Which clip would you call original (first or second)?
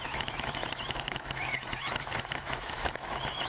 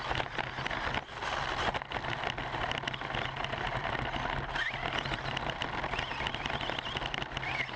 second